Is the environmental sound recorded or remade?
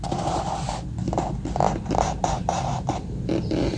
recorded